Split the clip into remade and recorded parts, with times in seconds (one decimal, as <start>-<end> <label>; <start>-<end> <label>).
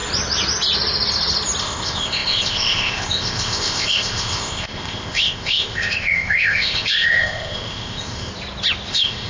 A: 0.0-1.6 recorded; 1.6-8.3 remade; 8.3-8.9 recorded; 8.9-9.3 remade